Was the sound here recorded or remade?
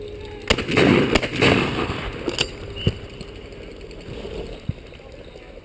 recorded